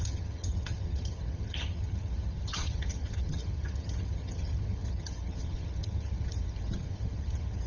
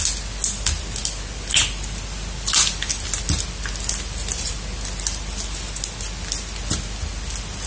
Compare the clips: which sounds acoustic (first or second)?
second